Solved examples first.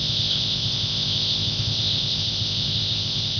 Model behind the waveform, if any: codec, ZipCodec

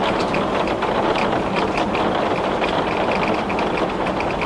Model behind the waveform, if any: none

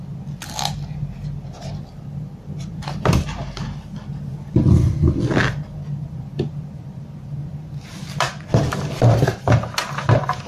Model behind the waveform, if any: none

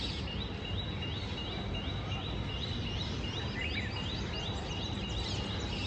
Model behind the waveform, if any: none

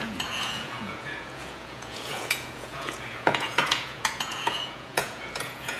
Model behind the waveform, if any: vocoder, Vocos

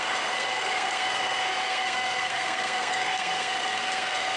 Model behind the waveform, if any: codec, SNAC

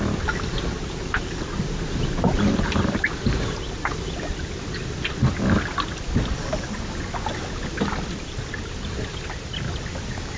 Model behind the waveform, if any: none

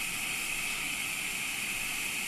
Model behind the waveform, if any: none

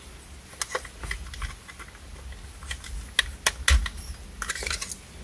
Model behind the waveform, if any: none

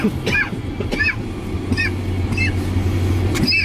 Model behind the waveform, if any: none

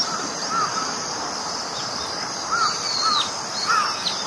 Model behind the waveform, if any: none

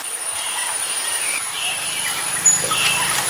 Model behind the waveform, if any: vocoder, BigVGAN v2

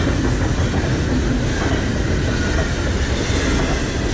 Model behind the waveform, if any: none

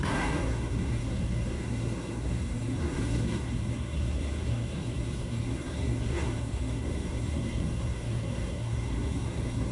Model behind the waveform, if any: codec, SNAC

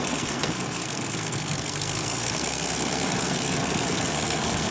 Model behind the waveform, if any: codec, SNAC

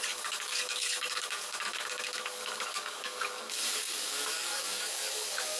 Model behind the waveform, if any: codec, DAC